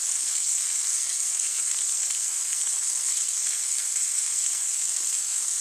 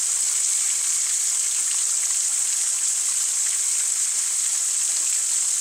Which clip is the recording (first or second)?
second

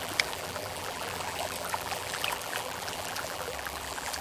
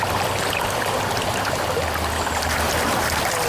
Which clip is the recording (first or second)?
second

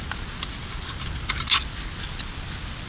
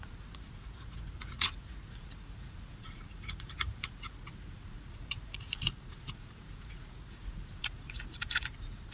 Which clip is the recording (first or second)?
first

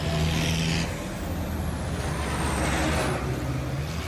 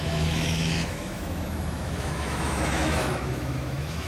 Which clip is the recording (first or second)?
first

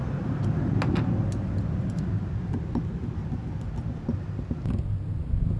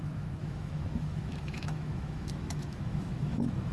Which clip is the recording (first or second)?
first